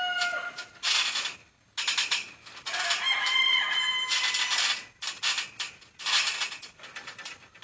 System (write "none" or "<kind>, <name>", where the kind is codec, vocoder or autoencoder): none